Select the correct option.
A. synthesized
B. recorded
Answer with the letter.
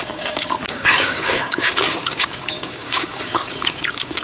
A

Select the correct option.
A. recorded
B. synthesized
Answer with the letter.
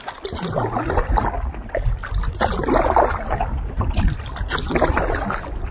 A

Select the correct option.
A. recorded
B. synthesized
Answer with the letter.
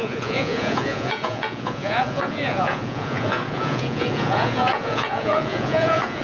B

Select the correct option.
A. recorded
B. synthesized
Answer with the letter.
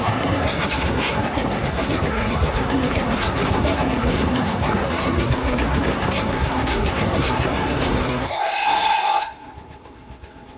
B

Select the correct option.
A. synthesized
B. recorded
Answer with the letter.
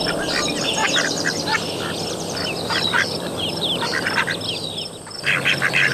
A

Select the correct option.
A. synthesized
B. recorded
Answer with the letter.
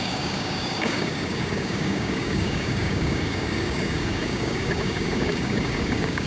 A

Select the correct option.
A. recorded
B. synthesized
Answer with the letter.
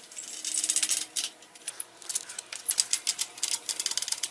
A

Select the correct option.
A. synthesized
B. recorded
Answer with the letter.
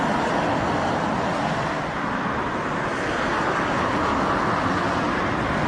B